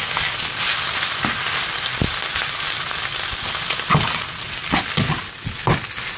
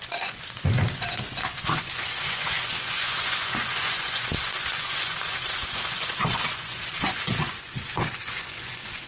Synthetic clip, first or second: second